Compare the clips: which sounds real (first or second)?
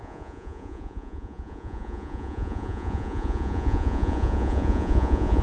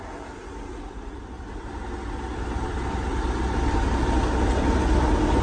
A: second